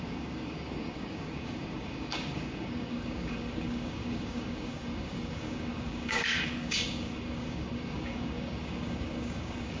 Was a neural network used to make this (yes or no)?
yes